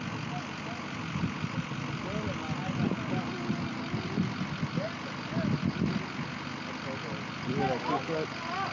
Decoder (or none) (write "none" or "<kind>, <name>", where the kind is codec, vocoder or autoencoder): none